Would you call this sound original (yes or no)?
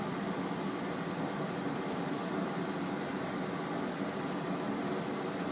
yes